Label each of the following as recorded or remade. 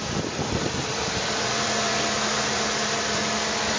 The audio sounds remade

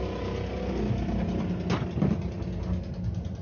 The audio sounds recorded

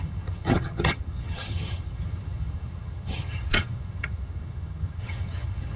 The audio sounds remade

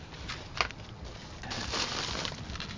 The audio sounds recorded